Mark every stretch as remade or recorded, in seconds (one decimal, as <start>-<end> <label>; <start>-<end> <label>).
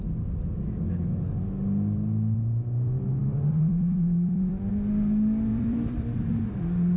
0.0-3.2 recorded; 3.2-4.7 remade; 4.7-5.5 recorded; 5.5-6.5 remade; 6.5-7.0 recorded